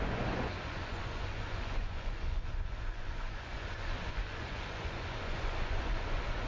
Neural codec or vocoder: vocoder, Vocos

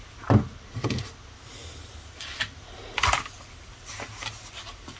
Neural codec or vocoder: none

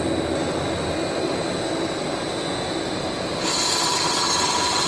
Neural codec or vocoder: none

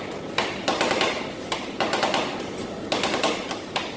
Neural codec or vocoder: none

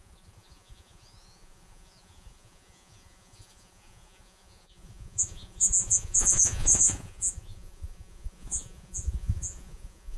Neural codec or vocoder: vocoder, Vocos